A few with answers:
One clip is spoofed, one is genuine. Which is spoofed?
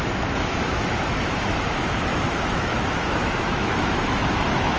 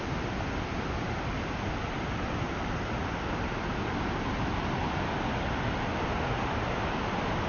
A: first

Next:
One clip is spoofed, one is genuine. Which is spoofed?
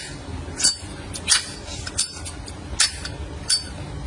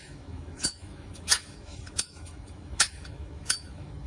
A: second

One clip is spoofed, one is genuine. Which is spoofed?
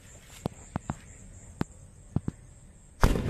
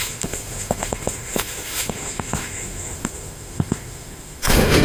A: second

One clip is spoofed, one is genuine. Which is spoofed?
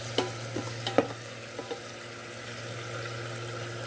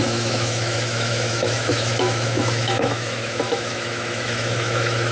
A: second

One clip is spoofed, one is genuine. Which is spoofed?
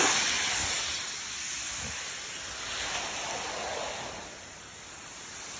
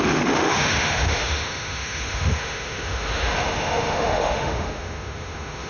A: second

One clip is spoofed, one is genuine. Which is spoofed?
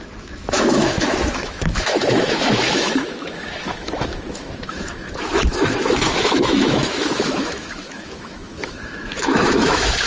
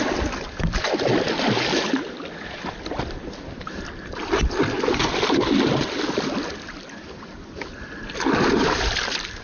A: first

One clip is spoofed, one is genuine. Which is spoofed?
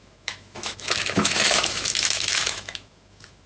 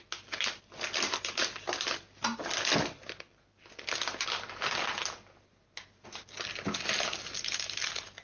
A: first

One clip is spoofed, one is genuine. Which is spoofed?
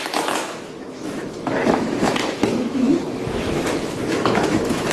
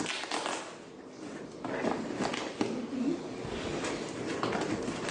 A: first